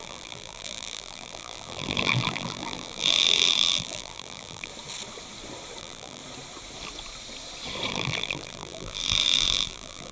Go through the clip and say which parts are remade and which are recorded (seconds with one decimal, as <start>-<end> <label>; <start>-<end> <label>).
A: 0.0-4.7 remade; 4.7-5.8 recorded; 5.8-6.2 remade; 6.2-7.9 recorded; 7.9-10.1 remade